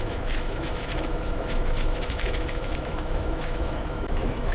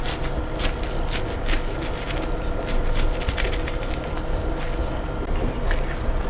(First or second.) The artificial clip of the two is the first